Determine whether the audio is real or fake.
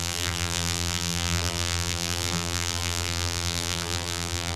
fake